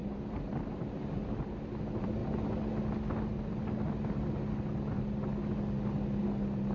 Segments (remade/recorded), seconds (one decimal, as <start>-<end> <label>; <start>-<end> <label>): 0.0-1.1 remade; 1.1-6.7 recorded